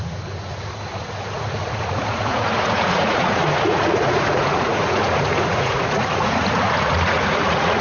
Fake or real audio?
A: fake